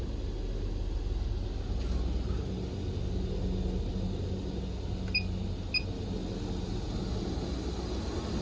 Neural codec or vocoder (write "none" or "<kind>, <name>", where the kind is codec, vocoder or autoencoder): none